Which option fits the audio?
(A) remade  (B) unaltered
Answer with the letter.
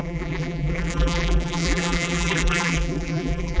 A